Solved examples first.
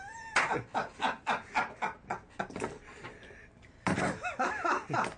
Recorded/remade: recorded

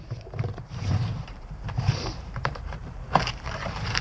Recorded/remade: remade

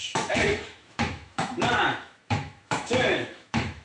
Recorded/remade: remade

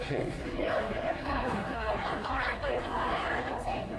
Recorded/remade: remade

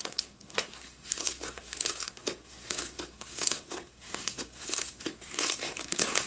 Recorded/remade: remade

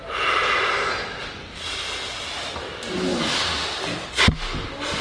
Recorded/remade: recorded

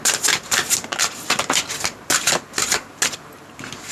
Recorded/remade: recorded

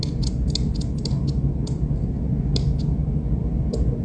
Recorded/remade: recorded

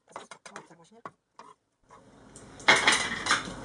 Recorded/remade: recorded